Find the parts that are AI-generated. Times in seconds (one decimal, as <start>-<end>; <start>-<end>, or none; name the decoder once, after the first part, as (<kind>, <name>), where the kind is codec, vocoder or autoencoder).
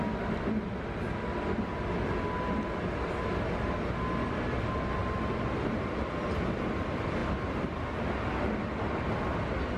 7.2-7.8 (vocoder, BigVGAN v2)